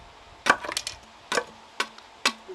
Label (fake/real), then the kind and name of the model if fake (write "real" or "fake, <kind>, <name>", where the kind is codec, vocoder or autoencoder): real